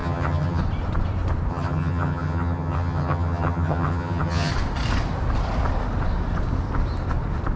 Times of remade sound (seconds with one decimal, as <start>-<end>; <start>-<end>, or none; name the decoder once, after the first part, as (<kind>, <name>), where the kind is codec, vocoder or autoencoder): 0.0-0.6 (vocoder, HiFi-GAN); 1.5-4.5